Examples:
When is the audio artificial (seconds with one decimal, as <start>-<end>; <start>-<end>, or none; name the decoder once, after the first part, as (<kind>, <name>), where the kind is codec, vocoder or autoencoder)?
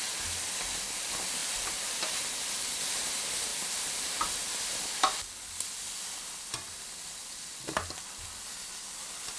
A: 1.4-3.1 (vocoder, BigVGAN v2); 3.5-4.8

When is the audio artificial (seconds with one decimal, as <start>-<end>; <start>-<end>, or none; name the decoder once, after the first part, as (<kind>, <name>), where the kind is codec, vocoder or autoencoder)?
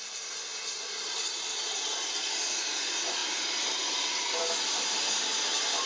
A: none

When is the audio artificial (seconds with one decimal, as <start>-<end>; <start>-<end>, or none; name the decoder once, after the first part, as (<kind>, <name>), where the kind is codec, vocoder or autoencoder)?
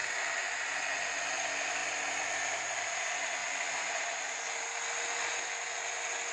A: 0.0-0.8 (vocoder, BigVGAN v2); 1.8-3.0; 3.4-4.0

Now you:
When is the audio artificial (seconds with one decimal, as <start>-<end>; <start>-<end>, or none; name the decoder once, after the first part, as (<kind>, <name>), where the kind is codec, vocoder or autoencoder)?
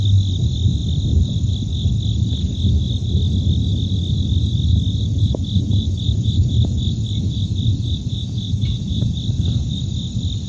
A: 0.8-1.5 (vocoder, BigVGAN v2)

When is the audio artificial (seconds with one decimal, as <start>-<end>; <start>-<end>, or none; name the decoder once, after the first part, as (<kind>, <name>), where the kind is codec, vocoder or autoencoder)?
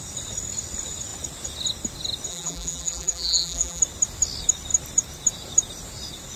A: 2.3-3.8 (vocoder, BigVGAN v2)